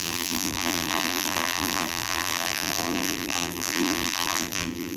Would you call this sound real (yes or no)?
no